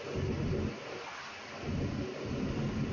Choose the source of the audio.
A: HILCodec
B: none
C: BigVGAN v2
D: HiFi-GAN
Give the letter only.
B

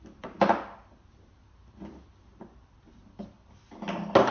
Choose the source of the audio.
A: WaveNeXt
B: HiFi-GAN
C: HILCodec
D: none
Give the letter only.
D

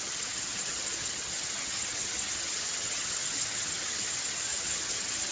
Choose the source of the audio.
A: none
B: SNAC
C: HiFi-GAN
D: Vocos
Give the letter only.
C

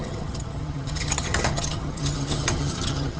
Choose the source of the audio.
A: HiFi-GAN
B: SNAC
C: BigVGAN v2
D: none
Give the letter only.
A